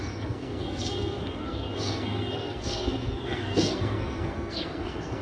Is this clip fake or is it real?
fake